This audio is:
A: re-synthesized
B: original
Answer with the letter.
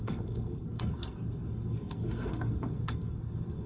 A